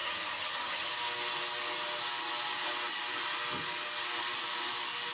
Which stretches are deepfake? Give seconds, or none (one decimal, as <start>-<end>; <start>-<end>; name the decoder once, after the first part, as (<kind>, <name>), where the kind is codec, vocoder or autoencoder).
0.0-0.9 (vocoder, HiFi-GAN)